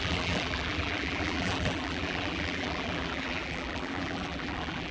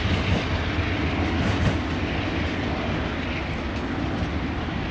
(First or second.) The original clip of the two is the second